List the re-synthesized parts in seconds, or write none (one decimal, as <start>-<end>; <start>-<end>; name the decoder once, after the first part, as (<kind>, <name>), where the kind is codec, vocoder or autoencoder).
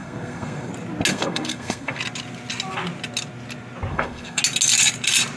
0.0-0.7 (codec, SNAC); 1.1-2.0; 3.9-4.4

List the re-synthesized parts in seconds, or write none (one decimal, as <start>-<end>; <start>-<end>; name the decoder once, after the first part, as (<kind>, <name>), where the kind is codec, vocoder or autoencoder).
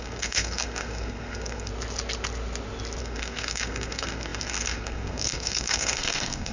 0.0-1.7 (codec, SNAC); 3.0-6.5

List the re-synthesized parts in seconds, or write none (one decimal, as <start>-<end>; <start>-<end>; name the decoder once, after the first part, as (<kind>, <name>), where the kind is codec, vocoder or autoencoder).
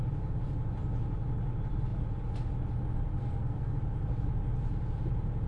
3.2-3.7 (codec, SNAC)